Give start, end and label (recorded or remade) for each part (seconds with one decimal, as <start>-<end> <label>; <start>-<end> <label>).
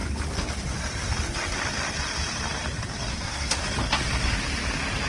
0.0-3.1 recorded; 3.1-3.6 remade; 3.6-5.1 recorded